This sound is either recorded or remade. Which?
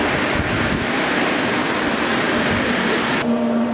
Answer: remade